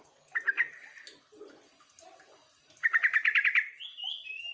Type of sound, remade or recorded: recorded